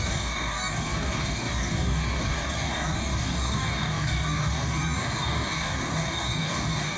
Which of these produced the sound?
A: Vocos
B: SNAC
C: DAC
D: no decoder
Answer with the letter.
C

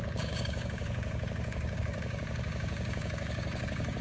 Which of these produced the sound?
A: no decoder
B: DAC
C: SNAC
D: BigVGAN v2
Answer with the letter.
B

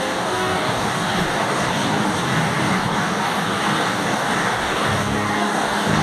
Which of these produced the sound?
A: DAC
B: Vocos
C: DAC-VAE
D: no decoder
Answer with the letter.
A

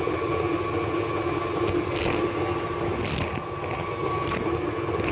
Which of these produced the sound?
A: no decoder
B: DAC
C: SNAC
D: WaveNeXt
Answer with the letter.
A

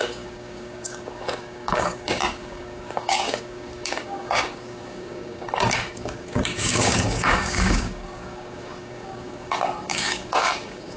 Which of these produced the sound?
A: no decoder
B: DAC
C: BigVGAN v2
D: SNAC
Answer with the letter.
B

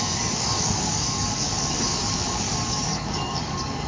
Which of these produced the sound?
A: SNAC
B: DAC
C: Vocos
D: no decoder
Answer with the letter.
B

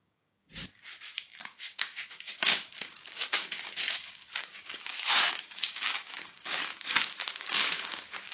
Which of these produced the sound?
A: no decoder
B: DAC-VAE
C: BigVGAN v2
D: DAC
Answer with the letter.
D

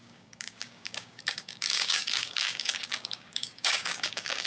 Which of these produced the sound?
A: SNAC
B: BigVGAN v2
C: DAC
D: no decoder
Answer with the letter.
C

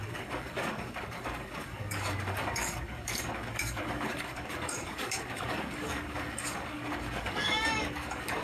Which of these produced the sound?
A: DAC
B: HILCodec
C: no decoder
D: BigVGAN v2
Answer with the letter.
A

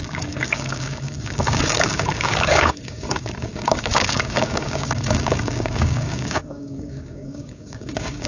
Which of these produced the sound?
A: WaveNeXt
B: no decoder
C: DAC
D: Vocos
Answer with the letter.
C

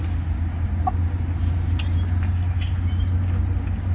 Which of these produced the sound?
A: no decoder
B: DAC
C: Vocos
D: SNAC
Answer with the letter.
A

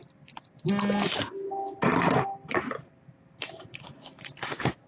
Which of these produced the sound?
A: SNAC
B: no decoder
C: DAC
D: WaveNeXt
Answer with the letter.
B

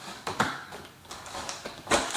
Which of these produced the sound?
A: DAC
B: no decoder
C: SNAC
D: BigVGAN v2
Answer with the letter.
A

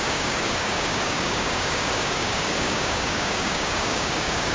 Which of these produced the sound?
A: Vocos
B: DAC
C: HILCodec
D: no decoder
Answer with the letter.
B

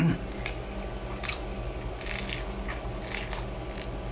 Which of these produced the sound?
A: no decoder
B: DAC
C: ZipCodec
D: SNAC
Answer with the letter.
A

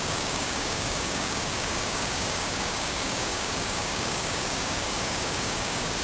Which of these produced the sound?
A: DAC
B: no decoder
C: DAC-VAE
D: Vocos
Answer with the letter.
A